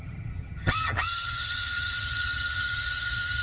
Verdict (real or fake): fake